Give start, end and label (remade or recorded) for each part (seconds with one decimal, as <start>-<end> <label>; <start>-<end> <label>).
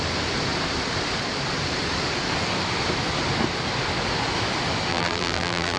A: 0.0-4.9 recorded; 4.9-5.8 remade